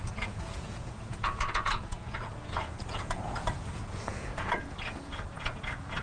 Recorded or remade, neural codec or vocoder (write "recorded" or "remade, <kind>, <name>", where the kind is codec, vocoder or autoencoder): remade, vocoder, Vocos